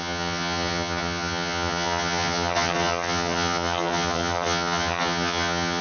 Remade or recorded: remade